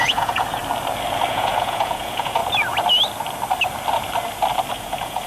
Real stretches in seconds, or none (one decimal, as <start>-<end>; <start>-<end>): 0.6-1.3; 2.4-4.7